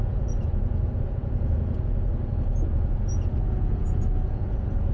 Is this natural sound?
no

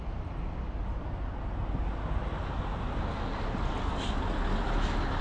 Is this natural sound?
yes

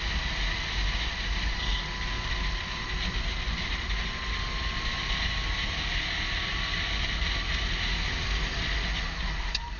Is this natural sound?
yes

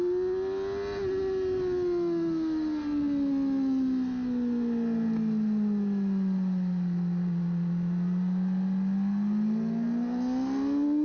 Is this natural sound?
yes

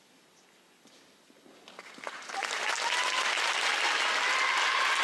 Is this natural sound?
yes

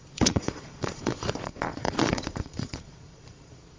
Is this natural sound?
no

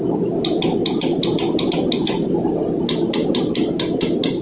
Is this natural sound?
yes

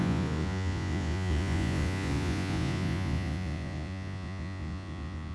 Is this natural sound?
no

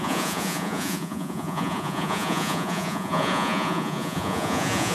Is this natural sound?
no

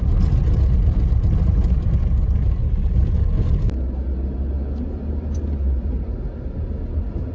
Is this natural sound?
yes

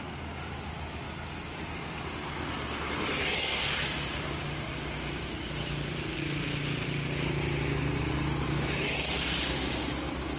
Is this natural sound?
yes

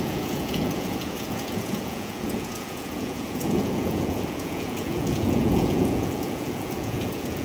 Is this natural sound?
no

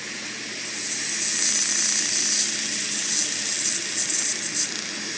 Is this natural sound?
yes